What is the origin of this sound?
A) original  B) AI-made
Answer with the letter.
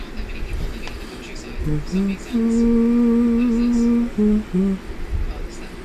A